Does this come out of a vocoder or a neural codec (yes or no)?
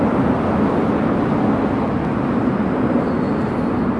no